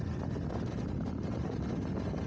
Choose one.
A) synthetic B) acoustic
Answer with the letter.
B